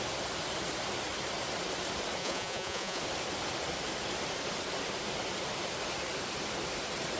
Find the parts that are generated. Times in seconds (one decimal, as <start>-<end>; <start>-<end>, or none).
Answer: 2.2-3.0

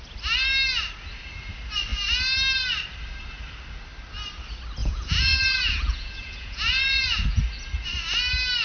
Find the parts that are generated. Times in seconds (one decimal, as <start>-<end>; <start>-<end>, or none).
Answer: 4.8-7.4

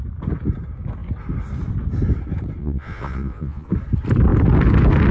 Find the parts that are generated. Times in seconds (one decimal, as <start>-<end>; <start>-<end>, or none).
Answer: 2.6-3.7